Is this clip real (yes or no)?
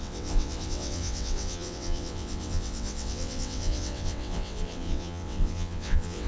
no